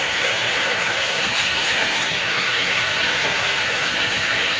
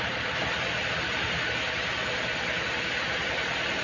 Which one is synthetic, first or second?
first